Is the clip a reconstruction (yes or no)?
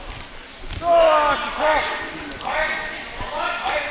no